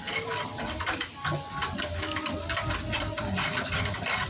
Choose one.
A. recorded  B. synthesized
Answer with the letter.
A